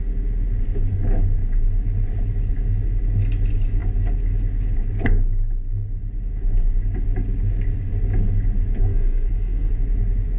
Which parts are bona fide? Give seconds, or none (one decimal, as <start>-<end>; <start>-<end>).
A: 0.0-8.8; 9.7-10.4